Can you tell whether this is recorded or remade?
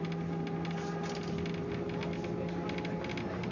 recorded